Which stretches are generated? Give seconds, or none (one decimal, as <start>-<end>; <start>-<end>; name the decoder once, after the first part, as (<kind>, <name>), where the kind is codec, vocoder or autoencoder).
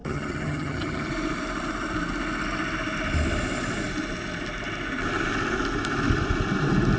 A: 0.0-1.1 (vocoder, HiFi-GAN)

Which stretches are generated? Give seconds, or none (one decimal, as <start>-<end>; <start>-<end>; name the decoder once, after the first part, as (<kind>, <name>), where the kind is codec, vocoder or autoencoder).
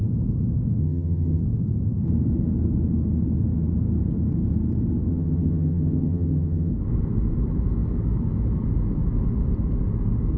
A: 0.8-1.4 (vocoder, HiFi-GAN); 5.1-6.7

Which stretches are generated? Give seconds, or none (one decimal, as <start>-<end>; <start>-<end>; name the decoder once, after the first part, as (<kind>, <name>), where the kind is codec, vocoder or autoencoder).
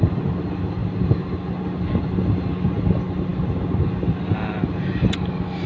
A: none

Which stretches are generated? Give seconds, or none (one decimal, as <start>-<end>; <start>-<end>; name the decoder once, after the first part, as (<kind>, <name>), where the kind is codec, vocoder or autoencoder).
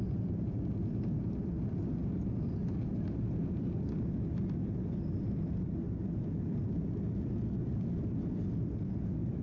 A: none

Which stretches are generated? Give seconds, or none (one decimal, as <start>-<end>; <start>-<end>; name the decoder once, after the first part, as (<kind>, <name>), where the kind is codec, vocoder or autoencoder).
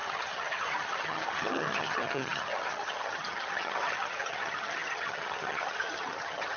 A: 0.0-6.6 (vocoder, HiFi-GAN)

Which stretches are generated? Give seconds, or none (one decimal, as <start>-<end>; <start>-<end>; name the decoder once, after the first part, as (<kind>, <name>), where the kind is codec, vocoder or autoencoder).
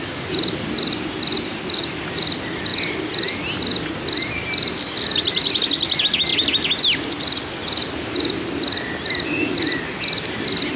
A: none